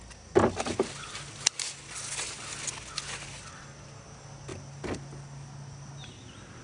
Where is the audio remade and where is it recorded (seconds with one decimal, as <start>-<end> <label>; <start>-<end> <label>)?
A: 0.0-6.6 recorded